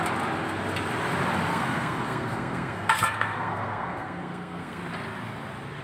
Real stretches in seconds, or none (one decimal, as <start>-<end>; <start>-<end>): 0.0-1.5; 4.8-5.8